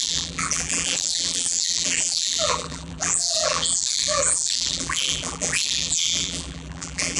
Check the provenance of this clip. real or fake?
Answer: fake